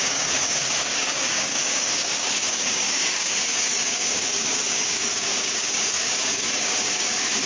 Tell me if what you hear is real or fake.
fake